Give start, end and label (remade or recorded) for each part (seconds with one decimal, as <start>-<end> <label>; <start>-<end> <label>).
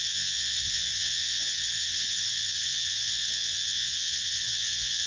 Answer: 0.0-5.1 remade